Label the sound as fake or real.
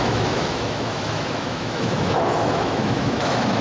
fake